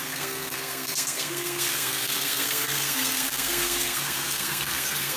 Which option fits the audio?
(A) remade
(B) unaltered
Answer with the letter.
A